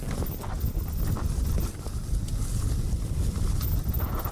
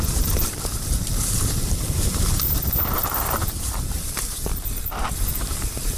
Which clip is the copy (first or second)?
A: second